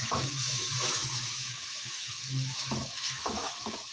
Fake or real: fake